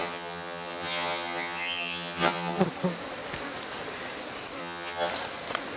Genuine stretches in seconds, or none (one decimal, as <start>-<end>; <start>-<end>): 2.6-4.6; 5.1-5.8